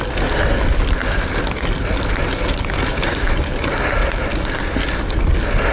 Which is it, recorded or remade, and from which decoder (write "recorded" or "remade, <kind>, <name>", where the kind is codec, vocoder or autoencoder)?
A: recorded